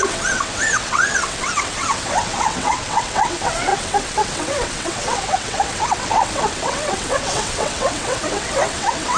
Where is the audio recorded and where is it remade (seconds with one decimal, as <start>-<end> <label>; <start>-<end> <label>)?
0.0-9.2 remade